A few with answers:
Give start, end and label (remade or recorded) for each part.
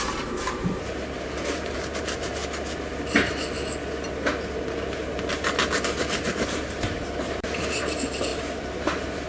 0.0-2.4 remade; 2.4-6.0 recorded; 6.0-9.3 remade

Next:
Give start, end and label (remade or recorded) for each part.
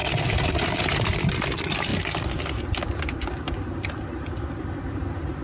0.0-1.9 remade; 1.9-3.0 recorded; 3.0-5.4 remade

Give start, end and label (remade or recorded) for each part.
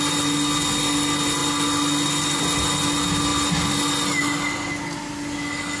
0.0-5.8 recorded